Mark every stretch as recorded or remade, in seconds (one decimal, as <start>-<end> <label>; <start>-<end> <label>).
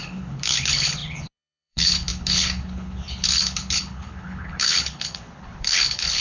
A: 0.0-6.2 remade